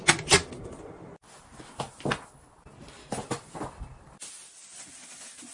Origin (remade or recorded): recorded